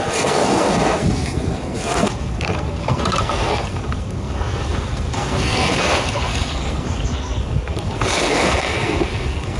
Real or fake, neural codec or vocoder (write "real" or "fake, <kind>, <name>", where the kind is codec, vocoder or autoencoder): fake, codec, SNAC